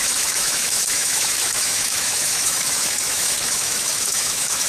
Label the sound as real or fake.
fake